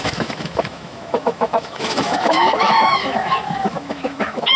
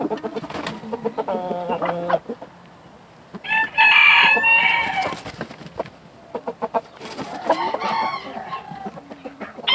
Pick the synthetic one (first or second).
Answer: first